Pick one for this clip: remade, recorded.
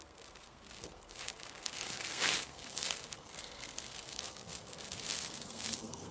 remade